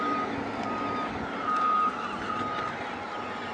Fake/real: real